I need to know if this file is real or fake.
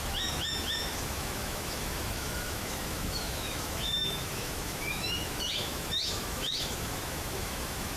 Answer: fake